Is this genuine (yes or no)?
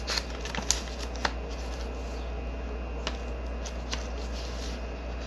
yes